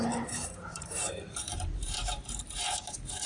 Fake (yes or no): yes